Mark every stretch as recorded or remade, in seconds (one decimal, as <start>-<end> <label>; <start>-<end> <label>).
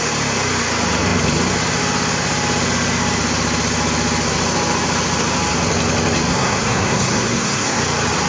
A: 0.0-6.3 recorded; 6.3-7.8 remade; 7.8-8.3 recorded